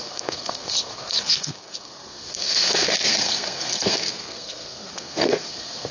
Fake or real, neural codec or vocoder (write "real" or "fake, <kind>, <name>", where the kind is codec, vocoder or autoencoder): fake, codec, SNAC